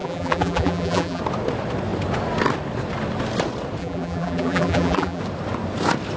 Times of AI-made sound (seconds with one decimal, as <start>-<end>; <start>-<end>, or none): 0.0-1.2; 3.8-5.2

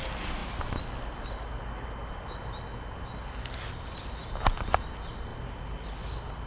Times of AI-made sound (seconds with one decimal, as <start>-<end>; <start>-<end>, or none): 0.4-4.3; 5.3-6.5

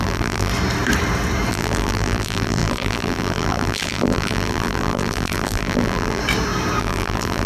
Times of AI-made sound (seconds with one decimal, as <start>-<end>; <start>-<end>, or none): 0.0-0.5; 1.5-6.2; 6.8-7.5

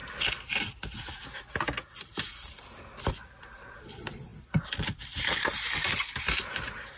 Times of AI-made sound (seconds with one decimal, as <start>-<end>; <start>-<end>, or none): 4.3-5.3